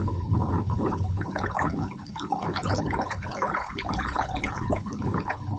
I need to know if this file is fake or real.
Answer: fake